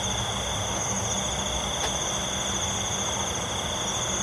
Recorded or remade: recorded